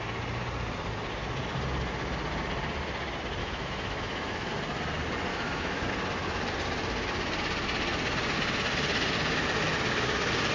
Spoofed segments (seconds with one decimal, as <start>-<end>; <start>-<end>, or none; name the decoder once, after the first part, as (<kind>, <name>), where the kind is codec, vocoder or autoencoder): 3.4-4.5 (autoencoder, DAC-VAE); 5.3-5.9